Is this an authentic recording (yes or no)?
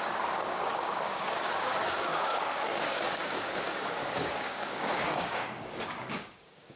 no